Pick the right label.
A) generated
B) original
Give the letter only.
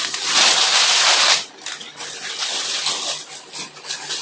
B